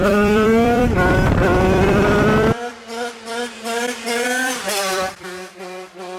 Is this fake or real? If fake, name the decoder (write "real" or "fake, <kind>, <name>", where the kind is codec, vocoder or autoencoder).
fake, vocoder, BigVGAN v2